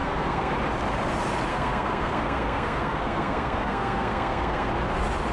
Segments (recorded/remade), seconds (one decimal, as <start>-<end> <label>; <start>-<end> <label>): 0.0-0.5 remade; 0.5-1.5 recorded; 1.5-4.7 remade; 4.7-5.3 recorded